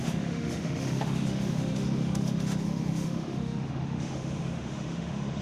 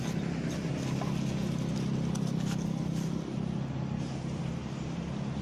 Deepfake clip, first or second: first